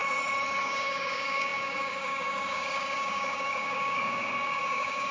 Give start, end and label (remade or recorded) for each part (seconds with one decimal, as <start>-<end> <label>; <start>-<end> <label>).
0.0-0.6 recorded; 0.6-5.1 remade